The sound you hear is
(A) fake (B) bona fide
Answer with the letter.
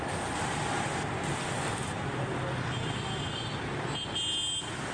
B